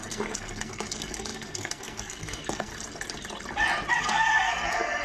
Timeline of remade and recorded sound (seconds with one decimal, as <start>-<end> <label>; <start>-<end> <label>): 0.0-2.7 remade; 2.7-4.0 recorded; 4.0-5.0 remade